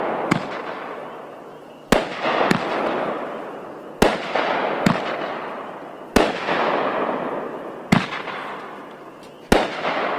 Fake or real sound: real